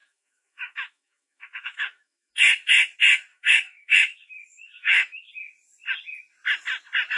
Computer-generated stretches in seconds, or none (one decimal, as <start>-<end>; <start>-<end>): 0.0-2.3; 3.3-5.3